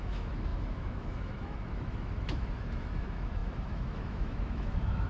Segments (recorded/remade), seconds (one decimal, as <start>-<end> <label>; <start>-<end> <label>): 0.0-5.1 remade